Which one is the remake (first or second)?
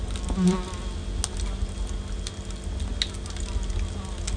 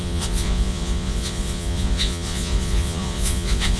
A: second